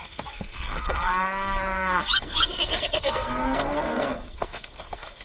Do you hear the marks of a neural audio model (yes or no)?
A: yes